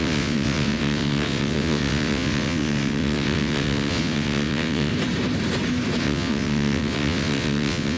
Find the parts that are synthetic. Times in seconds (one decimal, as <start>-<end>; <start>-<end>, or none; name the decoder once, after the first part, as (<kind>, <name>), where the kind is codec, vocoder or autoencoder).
0.0-4.9 (vocoder, WaveNeXt); 6.0-8.0